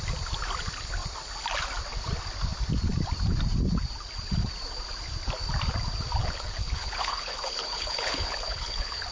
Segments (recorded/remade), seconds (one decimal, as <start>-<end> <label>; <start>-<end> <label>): 0.0-6.2 recorded; 6.2-9.1 remade